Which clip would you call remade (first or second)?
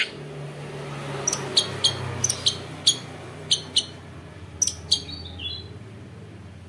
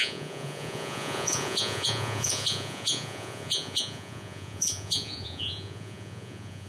second